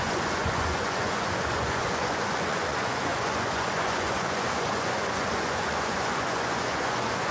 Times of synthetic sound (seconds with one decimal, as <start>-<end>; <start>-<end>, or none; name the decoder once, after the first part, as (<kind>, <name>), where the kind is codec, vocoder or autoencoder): 0.0-7.3 (vocoder, Vocos)